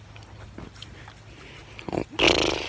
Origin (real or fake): real